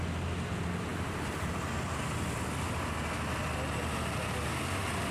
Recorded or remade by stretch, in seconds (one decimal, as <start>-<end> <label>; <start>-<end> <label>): 0.0-5.1 recorded